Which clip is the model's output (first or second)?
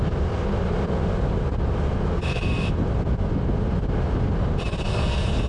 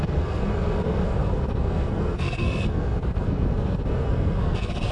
second